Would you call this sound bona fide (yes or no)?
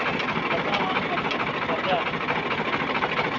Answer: yes